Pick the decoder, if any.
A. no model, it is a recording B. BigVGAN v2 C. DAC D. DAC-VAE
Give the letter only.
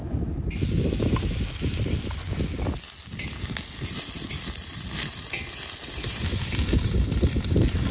A